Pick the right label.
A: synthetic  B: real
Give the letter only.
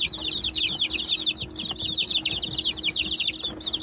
B